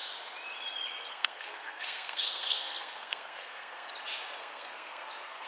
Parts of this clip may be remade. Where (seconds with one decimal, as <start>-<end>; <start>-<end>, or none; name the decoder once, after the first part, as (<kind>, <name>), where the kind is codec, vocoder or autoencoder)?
1.1-3.9 (codec, SNAC); 4.4-5.5